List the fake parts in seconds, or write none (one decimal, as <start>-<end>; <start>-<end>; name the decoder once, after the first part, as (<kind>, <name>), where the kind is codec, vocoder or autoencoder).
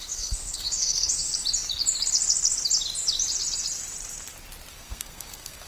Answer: 0.0-1.3 (codec, SNAC); 4.7-5.7